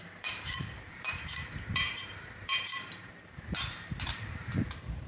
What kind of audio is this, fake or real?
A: fake